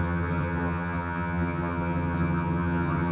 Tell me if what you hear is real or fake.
fake